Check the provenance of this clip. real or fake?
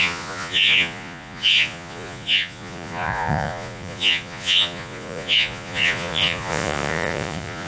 fake